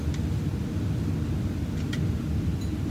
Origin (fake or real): real